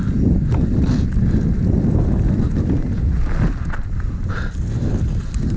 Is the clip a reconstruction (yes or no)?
no